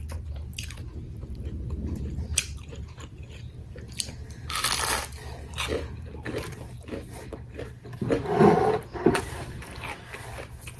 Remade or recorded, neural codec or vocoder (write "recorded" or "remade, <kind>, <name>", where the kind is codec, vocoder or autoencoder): recorded